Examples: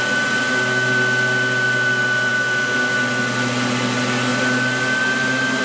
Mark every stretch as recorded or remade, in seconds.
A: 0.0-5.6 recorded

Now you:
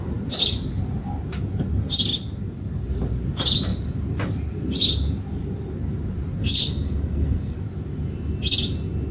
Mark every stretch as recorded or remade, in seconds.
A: 0.0-6.4 recorded; 6.4-7.6 remade; 7.6-9.1 recorded